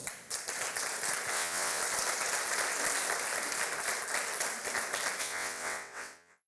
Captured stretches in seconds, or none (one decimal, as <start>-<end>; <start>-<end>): 0.0-1.3; 1.8-5.2